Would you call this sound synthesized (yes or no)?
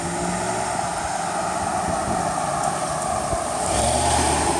no